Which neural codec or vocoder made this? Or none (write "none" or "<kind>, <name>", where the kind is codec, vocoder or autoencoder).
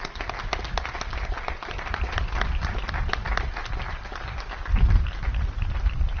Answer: none